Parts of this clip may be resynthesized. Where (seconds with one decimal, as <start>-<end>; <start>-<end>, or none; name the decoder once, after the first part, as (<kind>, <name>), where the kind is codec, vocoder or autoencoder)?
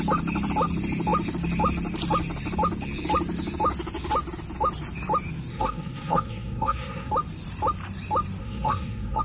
5.5-7.1 (codec, SNAC); 8.4-9.2